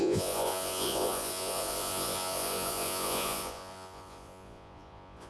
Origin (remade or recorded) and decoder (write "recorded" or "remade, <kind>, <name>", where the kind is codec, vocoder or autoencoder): remade, vocoder, Vocos